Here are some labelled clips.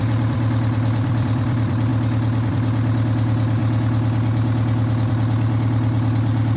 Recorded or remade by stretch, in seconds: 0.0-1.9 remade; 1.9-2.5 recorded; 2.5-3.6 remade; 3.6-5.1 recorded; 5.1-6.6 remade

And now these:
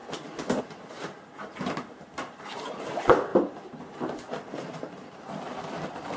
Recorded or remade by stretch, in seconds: 0.0-6.2 remade

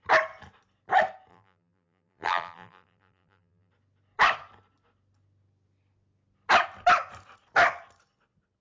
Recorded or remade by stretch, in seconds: 0.0-1.3 recorded; 1.3-3.7 remade; 3.7-8.6 recorded

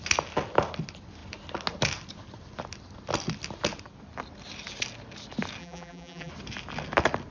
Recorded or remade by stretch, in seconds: 0.0-5.6 recorded; 5.6-6.3 remade; 6.3-7.3 recorded

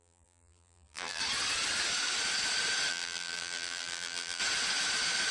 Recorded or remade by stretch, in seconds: 0.0-1.2 remade; 1.2-2.9 recorded; 2.9-4.4 remade; 4.4-5.3 recorded

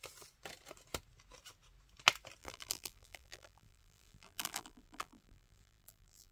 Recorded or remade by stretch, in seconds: 0.0-2.4 recorded; 2.4-6.3 remade

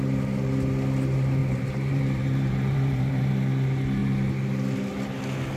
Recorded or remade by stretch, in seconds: 0.0-1.4 recorded; 1.4-3.3 remade; 3.3-5.6 recorded